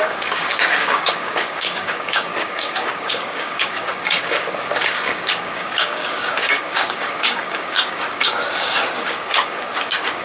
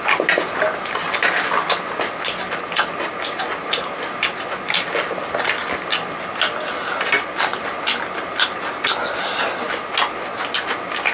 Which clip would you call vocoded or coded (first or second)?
first